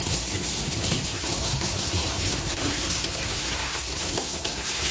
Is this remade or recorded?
remade